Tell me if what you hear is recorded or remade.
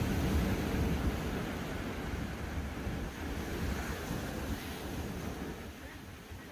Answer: recorded